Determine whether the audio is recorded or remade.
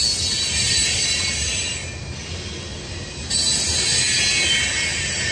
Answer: recorded